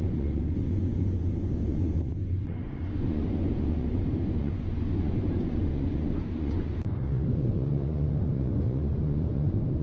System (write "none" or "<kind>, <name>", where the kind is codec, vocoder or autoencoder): vocoder, Vocos